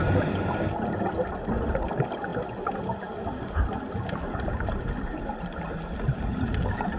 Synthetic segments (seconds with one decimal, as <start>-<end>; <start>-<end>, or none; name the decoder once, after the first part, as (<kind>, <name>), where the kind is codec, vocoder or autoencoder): none